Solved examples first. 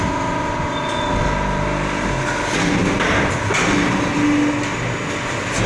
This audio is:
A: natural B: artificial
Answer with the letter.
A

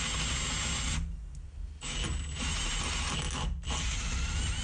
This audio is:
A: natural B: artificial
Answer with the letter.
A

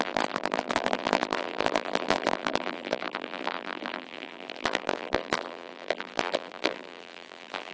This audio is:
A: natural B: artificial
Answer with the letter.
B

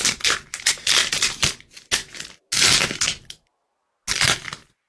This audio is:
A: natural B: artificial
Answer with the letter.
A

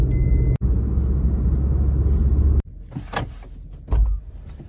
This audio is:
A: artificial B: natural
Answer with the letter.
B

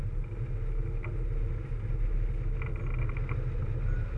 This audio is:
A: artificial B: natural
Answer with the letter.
B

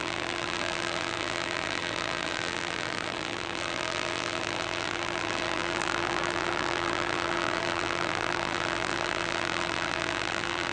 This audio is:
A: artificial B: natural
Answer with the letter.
A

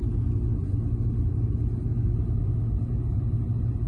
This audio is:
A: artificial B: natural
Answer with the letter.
B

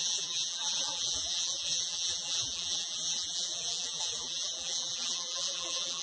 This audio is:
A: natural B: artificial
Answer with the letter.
B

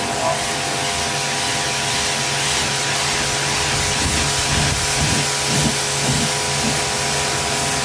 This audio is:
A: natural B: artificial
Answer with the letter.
A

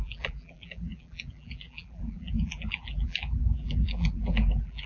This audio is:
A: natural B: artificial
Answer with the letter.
B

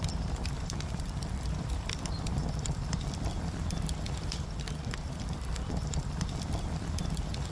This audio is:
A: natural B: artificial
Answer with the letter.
B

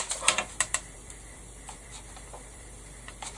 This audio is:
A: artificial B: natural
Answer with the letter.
A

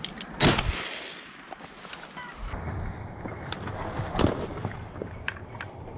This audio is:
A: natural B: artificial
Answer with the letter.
A